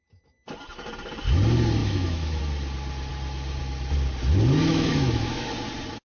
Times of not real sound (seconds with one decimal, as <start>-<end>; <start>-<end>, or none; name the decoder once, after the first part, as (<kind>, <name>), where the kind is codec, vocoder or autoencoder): 1.8-2.4 (autoencoder, DAC-VAE); 4.7-5.5